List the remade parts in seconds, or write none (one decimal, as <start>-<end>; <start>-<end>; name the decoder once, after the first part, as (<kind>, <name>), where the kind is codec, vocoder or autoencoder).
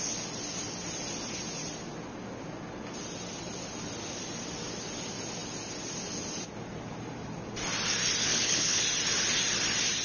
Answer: 8.2-8.8 (codec, HILCodec)